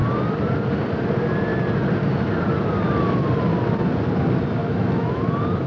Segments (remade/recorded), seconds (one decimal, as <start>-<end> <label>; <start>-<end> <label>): 0.0-4.6 recorded; 4.6-5.2 remade; 5.2-5.7 recorded